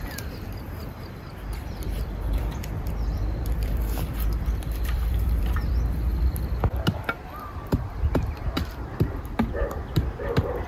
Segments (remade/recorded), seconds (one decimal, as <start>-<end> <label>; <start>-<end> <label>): 0.0-6.1 remade; 6.1-7.6 recorded; 7.6-10.7 remade